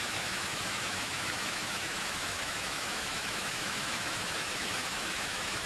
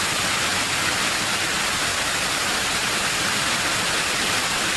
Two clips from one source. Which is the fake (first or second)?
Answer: first